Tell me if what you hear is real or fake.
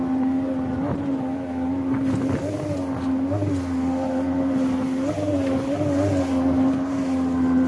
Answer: real